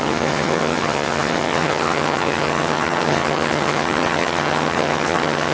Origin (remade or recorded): remade